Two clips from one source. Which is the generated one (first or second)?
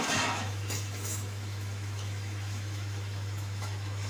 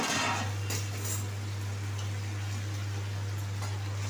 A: first